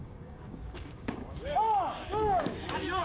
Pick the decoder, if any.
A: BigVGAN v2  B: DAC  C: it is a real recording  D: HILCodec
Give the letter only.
B